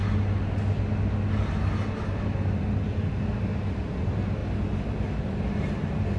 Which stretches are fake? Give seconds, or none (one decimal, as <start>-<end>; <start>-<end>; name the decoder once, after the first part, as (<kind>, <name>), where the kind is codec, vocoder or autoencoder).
3.7-4.4 (vocoder, BigVGAN v2); 4.9-6.2